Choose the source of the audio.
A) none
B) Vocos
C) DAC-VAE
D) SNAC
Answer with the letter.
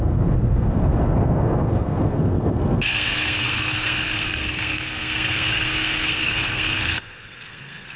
D